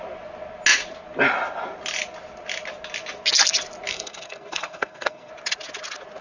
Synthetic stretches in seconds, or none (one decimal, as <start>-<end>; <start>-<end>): 3.9-5.3